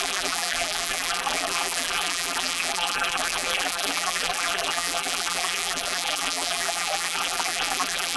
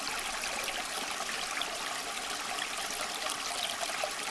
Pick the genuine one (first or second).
second